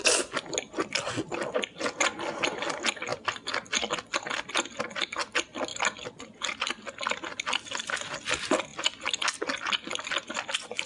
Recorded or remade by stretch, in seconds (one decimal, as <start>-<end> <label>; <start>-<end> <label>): 0.0-10.9 recorded